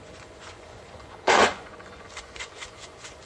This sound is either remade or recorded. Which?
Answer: remade